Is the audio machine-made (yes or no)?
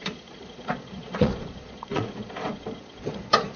yes